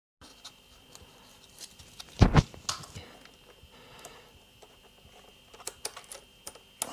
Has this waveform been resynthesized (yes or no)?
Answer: no